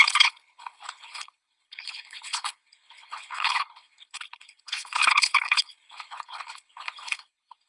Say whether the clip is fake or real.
fake